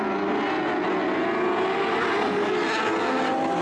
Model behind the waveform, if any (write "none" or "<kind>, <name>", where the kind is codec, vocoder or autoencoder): none